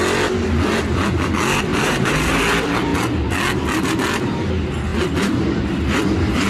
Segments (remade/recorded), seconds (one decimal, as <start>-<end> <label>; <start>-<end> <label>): 0.0-1.7 recorded; 1.7-2.4 remade; 2.4-6.5 recorded

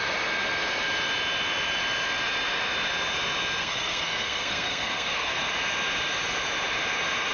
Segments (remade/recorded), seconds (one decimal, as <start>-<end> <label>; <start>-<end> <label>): 0.0-3.6 recorded; 3.6-5.4 remade; 5.4-7.3 recorded